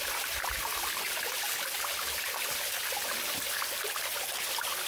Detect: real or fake real